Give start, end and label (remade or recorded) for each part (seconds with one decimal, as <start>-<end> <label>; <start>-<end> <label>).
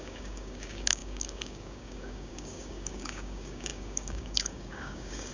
0.0-5.3 remade